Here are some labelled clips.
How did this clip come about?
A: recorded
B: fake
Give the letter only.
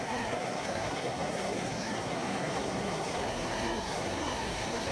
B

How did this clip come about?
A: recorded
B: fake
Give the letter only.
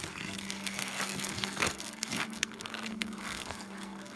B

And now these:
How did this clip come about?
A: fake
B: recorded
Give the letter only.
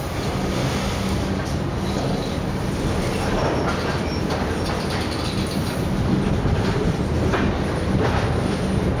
B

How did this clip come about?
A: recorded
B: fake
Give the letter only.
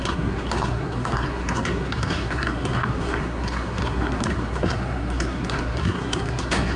B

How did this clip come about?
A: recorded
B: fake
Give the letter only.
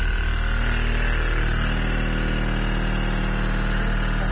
A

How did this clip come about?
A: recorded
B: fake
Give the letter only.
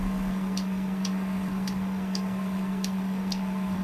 B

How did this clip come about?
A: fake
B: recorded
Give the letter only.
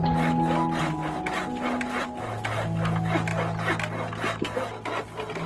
B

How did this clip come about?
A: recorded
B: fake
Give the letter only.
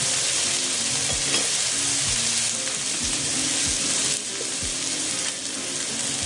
A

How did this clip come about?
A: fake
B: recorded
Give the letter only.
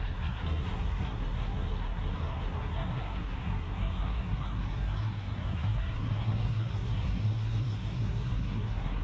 A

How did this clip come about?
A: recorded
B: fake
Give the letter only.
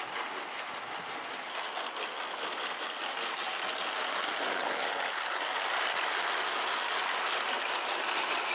A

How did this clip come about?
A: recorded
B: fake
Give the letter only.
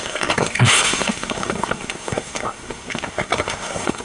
B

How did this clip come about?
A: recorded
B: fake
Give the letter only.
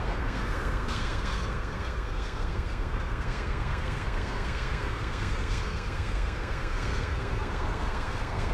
B